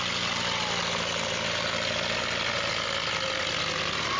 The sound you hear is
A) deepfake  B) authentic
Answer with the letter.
B